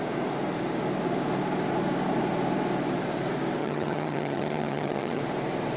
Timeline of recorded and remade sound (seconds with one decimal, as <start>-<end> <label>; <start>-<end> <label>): 0.0-3.6 recorded; 3.6-5.2 remade; 5.2-5.8 recorded